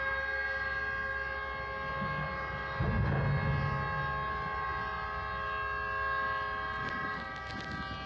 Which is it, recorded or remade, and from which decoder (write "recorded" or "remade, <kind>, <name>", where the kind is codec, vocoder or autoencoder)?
recorded